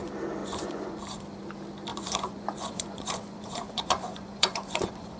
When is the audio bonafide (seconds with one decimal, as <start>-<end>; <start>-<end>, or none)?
0.0-0.4; 1.0-1.9